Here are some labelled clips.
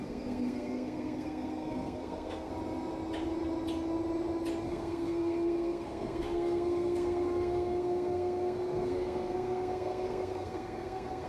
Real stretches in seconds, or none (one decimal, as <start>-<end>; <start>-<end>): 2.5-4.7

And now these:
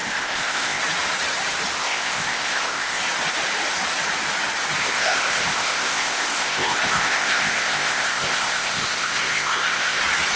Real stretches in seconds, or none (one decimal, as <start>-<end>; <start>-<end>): 0.8-1.8; 3.0-4.8; 10.0-10.4

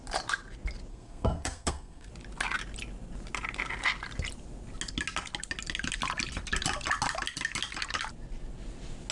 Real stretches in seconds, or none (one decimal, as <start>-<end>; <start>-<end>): 0.0-0.9; 2.1-9.1

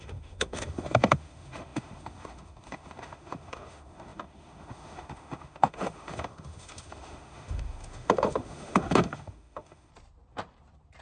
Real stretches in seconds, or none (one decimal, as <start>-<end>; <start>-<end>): 9.9-11.0